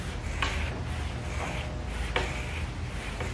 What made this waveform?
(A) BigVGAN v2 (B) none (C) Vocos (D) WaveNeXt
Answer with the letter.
B